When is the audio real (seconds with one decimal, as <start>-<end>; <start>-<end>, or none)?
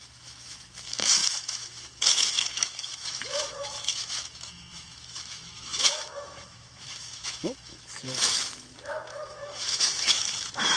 none